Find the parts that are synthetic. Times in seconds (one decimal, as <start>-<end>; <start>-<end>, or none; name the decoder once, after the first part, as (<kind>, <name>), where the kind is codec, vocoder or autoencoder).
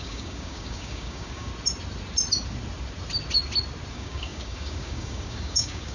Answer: 0.0-1.5 (codec, DAC); 3.9-5.9